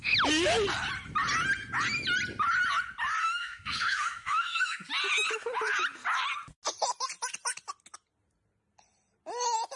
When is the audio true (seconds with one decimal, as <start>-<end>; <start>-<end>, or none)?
0.0-3.2; 4.9-9.8

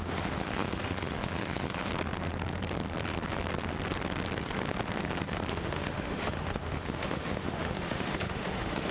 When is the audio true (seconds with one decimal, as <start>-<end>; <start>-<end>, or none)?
1.9-5.5

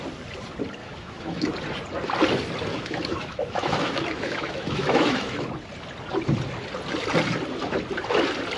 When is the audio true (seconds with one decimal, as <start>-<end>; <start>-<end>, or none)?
0.0-0.8; 1.5-2.7; 5.5-8.6

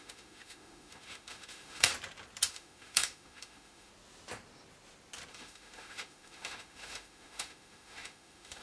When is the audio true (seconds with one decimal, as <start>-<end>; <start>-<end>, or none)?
1.9-2.5; 3.9-5.3

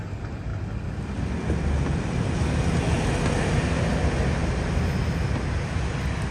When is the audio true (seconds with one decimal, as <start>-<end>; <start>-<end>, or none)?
0.0-6.3